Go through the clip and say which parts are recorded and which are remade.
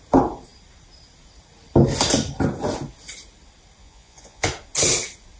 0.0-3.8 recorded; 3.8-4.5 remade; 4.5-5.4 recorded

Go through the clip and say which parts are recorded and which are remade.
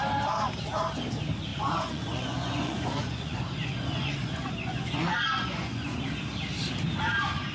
0.0-1.5 recorded; 1.5-6.0 remade; 6.0-7.5 recorded